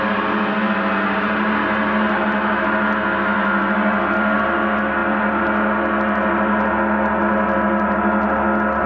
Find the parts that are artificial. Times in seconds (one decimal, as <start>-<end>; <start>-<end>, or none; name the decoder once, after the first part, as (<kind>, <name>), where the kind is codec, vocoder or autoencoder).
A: none